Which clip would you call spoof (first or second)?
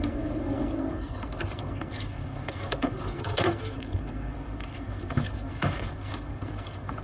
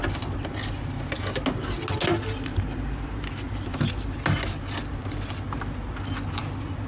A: first